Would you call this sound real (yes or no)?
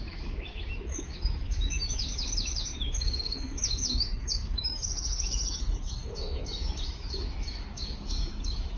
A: no